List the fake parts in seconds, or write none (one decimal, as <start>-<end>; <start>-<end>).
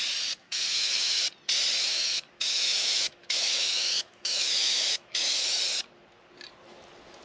0.4-1.2; 1.8-5.6